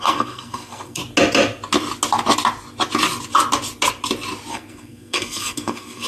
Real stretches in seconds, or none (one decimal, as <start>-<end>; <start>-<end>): 1.0-4.5